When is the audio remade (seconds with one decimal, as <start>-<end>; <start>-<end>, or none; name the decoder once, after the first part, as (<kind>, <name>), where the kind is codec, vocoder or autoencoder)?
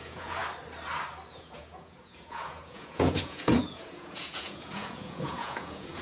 0.0-0.4 (vocoder, Vocos); 1.3-6.0